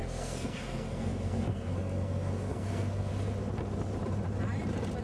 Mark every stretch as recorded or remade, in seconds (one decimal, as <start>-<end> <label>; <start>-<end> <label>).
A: 0.0-3.1 remade; 3.1-5.0 recorded